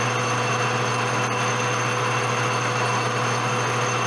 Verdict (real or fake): real